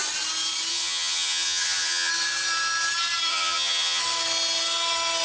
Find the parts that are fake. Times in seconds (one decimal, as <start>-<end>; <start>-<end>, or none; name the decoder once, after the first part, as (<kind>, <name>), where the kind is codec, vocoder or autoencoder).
0.7-2.1 (vocoder, HiFi-GAN); 3.3-4.0